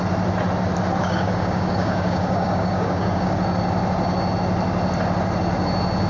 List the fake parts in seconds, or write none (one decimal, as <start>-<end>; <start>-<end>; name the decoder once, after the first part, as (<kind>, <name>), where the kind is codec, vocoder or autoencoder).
1.0-3.4 (codec, DAC)